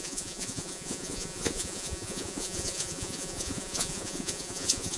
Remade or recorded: remade